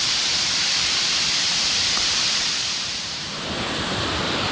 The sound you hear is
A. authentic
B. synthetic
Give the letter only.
B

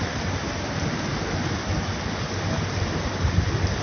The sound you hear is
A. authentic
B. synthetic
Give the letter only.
A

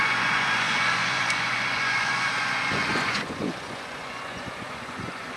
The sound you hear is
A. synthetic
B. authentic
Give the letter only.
A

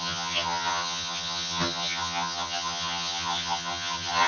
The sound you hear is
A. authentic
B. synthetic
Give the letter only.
B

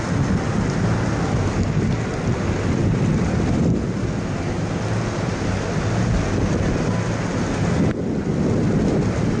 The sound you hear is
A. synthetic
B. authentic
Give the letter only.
B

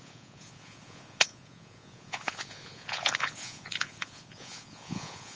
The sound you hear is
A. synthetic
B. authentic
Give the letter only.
A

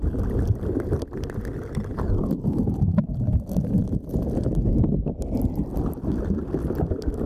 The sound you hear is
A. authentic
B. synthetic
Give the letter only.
A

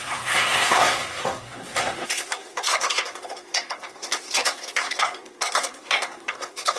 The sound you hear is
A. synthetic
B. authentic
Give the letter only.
A